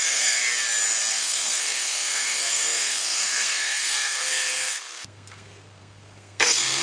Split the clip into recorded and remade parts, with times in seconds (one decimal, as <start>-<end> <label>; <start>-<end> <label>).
0.0-0.4 remade; 0.4-1.1 recorded; 1.1-6.8 remade